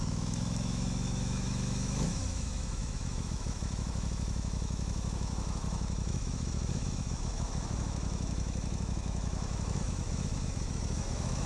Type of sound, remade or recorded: remade